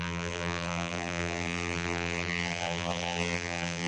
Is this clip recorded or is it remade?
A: remade